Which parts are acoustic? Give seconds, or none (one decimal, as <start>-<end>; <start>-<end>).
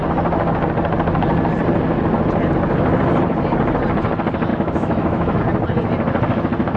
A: 0.0-4.5; 5.4-6.8